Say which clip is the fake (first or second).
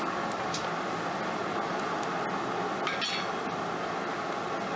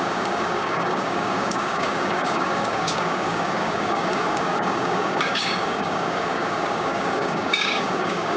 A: second